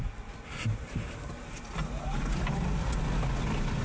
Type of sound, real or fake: real